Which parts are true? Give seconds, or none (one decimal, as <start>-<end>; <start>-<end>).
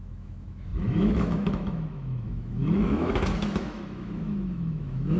none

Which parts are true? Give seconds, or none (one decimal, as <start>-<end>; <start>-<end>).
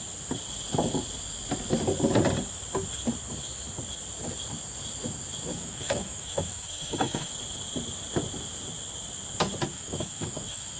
0.0-5.5; 7.3-9.7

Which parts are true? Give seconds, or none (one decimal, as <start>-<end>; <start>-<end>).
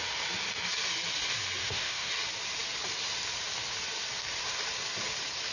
0.0-1.6; 2.1-5.5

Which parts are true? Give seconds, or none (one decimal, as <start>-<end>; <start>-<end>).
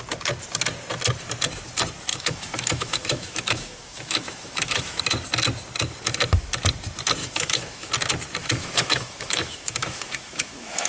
0.0-2.1; 5.0-7.2; 7.9-8.4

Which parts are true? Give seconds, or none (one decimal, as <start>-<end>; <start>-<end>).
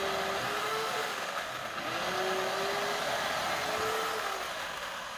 0.0-0.6; 1.5-4.5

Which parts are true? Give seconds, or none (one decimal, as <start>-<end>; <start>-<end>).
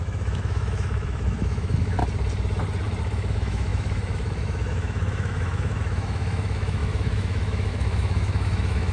2.0-3.0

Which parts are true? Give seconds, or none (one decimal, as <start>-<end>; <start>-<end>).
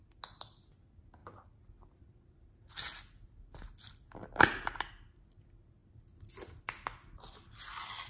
0.0-8.1